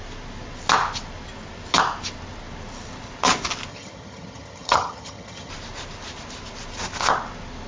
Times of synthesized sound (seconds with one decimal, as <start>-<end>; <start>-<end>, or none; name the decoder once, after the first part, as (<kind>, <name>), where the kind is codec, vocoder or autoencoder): 3.7-5.5 (vocoder, HiFi-GAN)